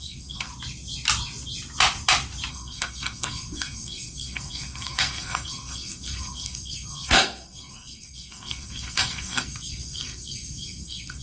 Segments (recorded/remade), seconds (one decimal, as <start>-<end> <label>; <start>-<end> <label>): 0.0-0.5 remade; 0.5-2.5 recorded; 2.5-11.2 remade